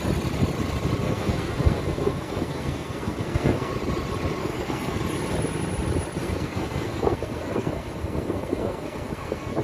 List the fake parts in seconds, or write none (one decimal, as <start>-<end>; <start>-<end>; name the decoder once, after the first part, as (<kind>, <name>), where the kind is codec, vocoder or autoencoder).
1.0-3.7 (codec, SNAC); 4.4-5.0; 6.2-9.6